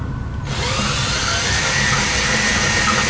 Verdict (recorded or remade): recorded